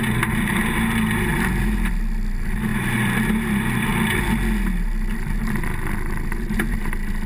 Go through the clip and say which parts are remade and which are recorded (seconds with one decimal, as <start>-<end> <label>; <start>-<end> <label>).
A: 0.0-1.3 recorded; 1.3-1.9 remade; 1.9-2.7 recorded; 2.7-4.2 remade; 4.2-7.3 recorded